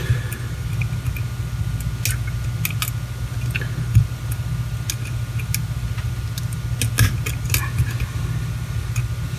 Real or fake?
real